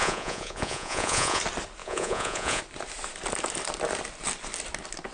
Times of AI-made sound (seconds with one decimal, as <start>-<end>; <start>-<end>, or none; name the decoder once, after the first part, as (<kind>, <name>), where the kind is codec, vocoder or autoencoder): 0.0-1.4 (vocoder, Vocos); 1.8-2.6